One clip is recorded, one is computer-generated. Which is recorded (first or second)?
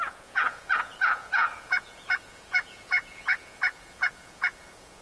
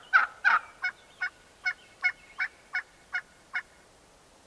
second